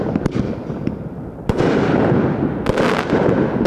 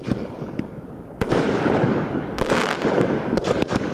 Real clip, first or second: first